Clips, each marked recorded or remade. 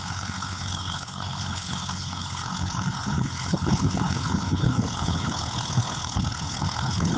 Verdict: remade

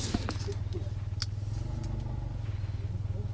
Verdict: recorded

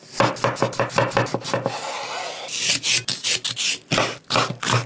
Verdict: recorded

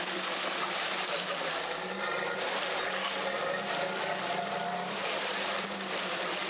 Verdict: recorded